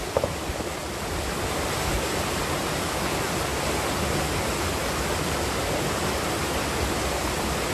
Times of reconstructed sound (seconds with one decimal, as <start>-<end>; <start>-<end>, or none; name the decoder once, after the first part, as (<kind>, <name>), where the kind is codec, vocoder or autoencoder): none